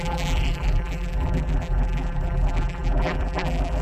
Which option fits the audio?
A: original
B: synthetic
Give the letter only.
B